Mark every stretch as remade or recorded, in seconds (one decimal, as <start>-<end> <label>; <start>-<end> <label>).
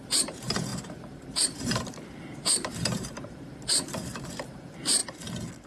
0.0-5.0 remade; 5.0-5.7 recorded